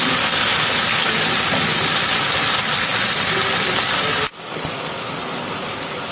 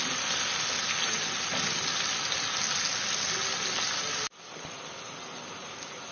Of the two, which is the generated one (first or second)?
first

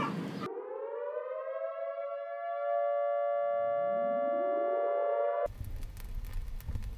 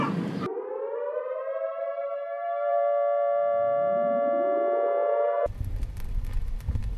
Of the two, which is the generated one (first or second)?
second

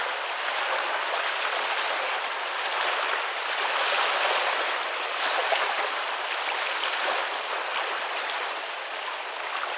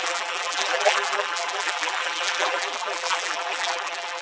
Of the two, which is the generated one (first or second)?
second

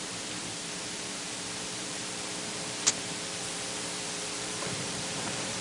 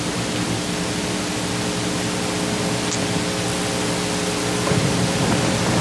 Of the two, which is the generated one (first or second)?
first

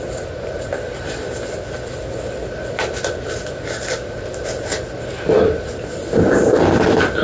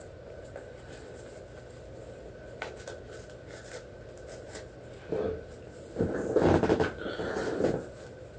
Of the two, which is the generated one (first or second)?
first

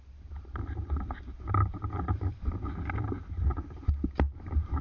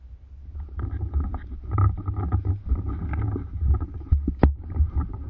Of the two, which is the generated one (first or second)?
first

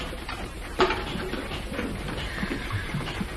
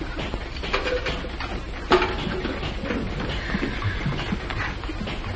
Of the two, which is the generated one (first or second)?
first